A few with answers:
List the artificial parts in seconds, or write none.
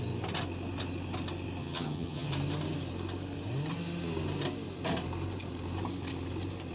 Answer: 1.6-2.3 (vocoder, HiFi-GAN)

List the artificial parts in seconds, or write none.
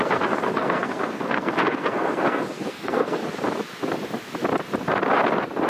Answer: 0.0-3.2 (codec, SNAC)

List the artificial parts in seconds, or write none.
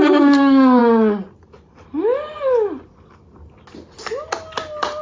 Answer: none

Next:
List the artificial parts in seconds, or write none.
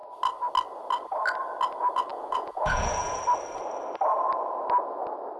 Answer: 2.1-3.2 (vocoder, Vocos)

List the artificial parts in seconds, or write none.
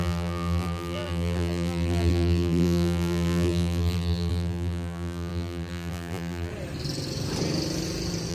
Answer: 0.0-6.5 (vocoder, BigVGAN v2)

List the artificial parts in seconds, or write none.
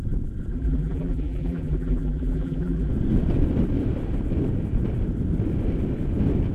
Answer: 0.5-2.9 (vocoder, BigVGAN v2)